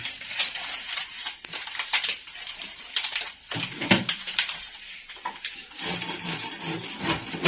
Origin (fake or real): fake